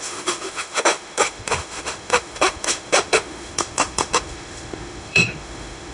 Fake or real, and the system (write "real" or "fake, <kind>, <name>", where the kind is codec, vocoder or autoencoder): fake, autoencoder, DAC-VAE